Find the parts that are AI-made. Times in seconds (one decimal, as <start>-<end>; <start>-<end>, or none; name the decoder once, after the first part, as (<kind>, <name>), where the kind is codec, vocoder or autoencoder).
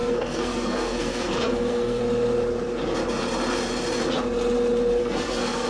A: 0.0-2.0 (codec, SNAC); 5.0-5.7